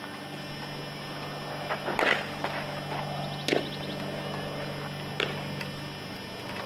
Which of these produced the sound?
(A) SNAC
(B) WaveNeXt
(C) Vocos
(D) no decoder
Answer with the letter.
D